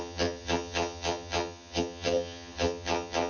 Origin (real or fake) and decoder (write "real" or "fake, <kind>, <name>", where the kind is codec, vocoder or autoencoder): fake, vocoder, HiFi-GAN